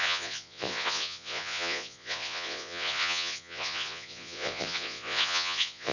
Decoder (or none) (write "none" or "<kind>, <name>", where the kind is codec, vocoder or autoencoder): vocoder, Vocos